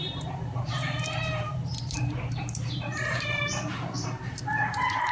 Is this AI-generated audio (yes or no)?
yes